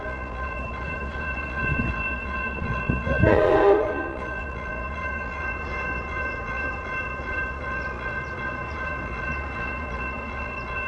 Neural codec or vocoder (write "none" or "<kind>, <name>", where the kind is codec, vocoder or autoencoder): vocoder, Vocos